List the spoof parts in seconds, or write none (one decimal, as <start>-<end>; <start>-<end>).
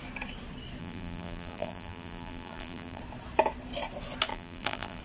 0.8-3.0; 4.3-5.0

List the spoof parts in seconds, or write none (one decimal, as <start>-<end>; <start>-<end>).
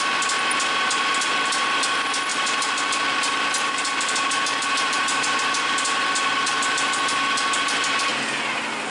2.3-7.2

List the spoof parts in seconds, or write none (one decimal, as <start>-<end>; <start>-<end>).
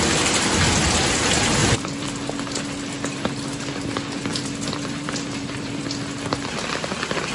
1.6-2.3; 4.3-5.8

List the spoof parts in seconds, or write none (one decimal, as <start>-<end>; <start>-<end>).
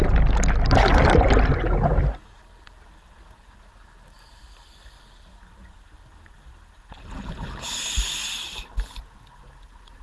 none